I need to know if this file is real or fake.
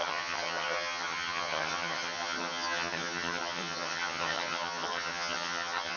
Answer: fake